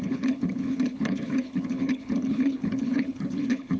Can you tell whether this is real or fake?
fake